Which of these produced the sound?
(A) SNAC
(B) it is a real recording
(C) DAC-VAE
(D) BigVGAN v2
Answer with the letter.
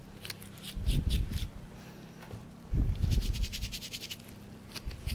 B